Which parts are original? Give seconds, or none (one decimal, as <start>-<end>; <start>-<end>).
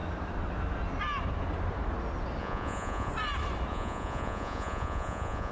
0.0-2.4; 3.1-3.7